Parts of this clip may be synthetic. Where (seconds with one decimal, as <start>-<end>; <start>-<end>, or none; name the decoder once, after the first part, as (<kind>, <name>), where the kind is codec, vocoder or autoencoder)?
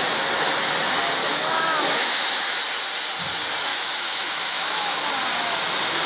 1.2-2.6 (autoencoder, DAC-VAE); 3.7-5.0